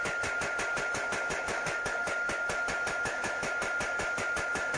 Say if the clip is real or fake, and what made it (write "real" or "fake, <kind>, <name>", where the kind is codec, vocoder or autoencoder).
real